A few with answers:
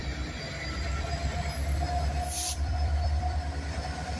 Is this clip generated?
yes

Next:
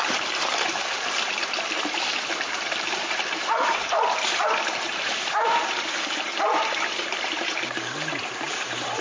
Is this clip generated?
yes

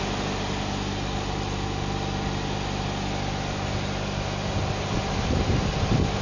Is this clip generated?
no